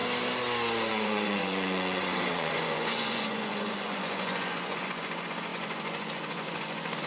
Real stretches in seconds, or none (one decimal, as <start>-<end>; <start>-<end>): 0.0-0.9